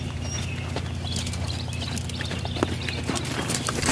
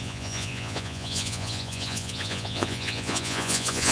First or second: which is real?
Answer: first